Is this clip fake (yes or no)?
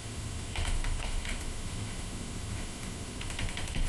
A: yes